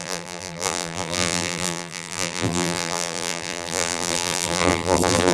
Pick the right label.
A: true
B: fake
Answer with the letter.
B